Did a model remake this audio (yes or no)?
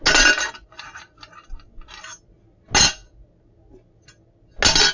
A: no